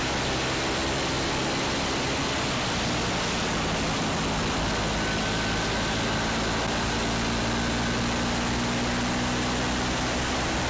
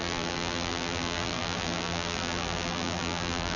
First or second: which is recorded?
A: first